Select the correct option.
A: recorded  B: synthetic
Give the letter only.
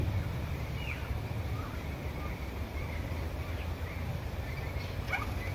A